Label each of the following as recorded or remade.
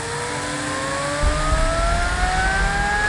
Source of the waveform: recorded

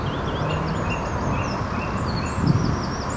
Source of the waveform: recorded